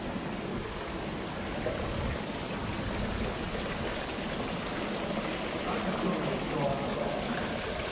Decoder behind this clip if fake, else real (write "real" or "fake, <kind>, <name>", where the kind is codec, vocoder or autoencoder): real